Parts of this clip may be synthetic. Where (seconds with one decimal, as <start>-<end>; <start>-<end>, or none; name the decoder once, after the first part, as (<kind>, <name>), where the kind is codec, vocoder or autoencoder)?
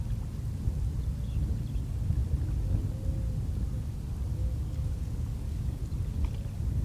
4.4-5.8 (codec, DAC)